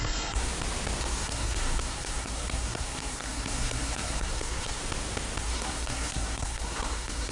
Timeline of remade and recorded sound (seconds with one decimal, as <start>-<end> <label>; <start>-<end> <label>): 0.0-0.5 remade; 0.5-1.0 recorded; 1.0-4.8 remade; 4.8-5.4 recorded; 5.4-7.3 remade